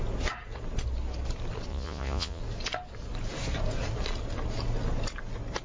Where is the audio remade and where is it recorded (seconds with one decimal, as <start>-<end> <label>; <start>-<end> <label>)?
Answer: 0.0-1.7 recorded; 1.7-2.4 remade; 2.4-5.6 recorded

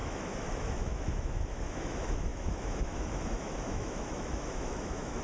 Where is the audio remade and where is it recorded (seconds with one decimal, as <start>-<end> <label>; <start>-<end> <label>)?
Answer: 0.0-5.2 remade

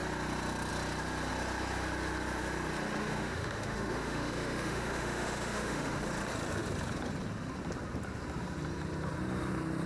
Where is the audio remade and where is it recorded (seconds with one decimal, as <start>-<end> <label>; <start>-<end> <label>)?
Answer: 0.0-3.0 recorded; 3.0-6.0 remade; 6.0-9.9 recorded

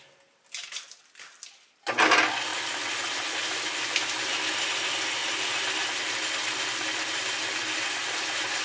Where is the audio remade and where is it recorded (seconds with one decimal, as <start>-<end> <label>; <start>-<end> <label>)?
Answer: 0.0-8.6 recorded

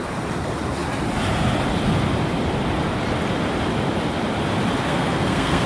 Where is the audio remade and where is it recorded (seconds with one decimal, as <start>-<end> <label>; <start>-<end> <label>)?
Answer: 0.0-4.8 recorded; 4.8-5.7 remade